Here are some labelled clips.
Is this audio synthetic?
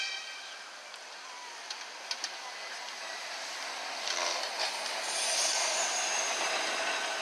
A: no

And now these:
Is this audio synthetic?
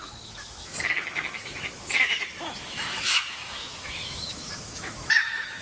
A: yes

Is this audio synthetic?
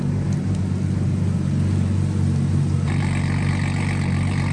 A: no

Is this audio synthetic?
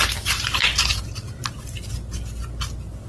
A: no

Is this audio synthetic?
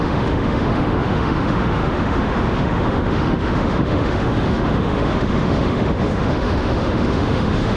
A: yes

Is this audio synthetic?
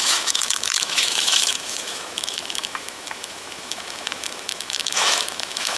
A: yes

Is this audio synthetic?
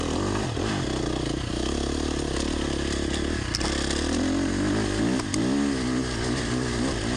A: no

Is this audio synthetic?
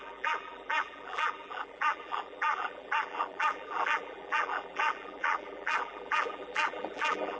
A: yes